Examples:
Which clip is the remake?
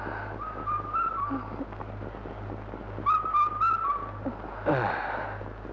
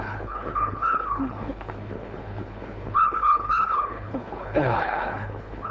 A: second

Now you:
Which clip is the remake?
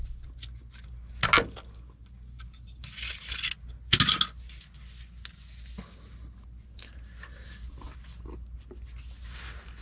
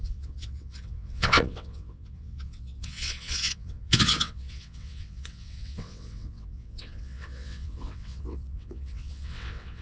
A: second